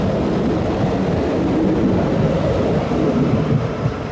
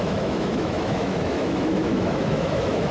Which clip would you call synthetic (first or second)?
second